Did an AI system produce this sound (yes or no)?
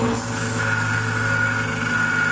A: no